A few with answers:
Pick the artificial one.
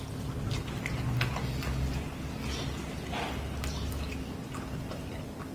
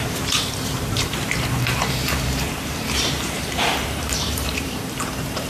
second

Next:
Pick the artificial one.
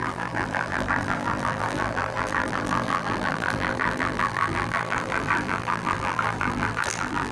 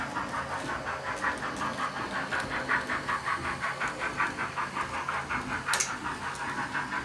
first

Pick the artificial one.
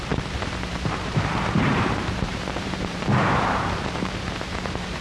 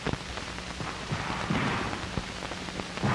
first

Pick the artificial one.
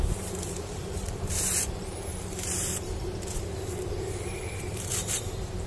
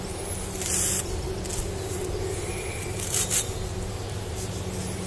first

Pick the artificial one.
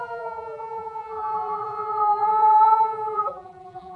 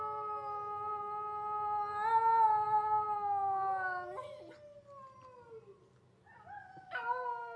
first